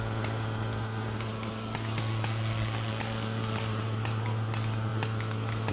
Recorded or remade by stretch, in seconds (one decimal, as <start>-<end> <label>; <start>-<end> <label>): 0.0-5.7 recorded